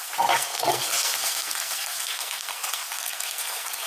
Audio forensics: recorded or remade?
remade